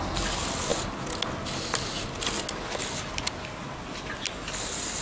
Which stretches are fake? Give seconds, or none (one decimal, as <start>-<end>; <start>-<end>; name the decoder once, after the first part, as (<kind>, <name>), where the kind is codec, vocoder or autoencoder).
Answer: none